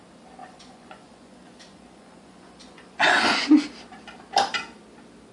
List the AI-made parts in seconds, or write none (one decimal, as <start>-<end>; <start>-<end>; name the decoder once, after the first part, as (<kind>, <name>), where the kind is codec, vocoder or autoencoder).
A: 0.4-3.6 (vocoder, Vocos)